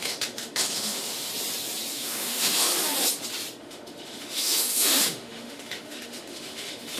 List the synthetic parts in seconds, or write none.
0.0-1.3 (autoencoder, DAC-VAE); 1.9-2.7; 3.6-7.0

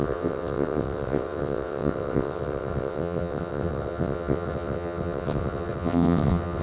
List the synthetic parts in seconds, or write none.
0.0-6.6 (vocoder, WaveNeXt)